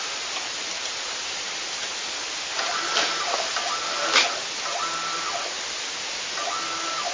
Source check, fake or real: real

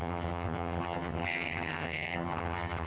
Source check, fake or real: fake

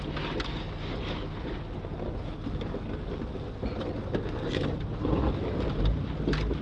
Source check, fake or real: real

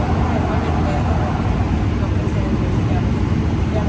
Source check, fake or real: real